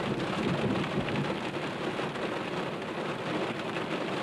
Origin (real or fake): real